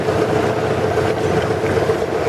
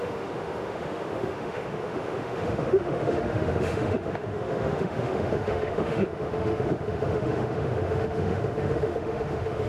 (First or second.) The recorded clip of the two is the first